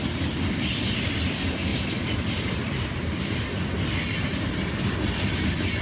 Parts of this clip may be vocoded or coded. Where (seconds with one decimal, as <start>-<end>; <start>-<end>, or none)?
0.0-5.8